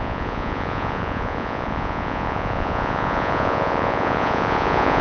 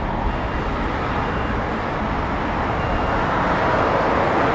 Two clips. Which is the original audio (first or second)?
second